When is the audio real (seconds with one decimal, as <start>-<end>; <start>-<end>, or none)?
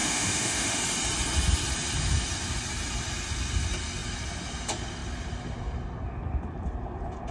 0.8-7.3